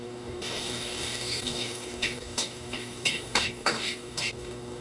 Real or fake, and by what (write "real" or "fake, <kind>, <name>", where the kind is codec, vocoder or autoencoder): fake, codec, DAC